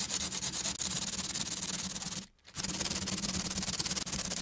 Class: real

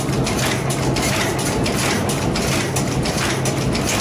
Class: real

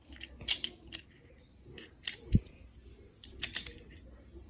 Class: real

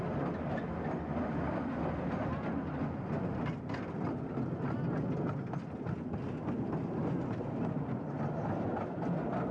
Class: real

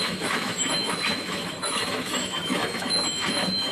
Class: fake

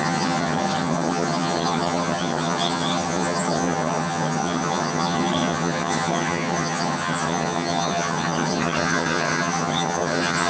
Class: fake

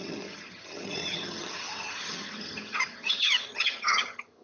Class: fake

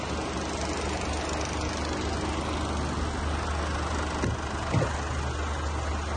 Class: real